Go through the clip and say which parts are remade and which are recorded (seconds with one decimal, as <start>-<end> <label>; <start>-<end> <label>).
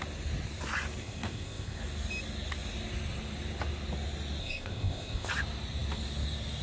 0.0-1.0 recorded; 1.0-1.8 remade; 1.8-4.4 recorded; 4.4-5.3 remade; 5.3-6.6 recorded